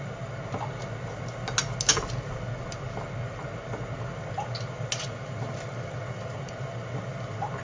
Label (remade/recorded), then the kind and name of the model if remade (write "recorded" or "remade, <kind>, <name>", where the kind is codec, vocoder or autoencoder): recorded